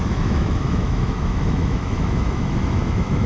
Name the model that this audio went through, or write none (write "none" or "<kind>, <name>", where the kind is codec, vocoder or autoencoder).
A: autoencoder, DAC-VAE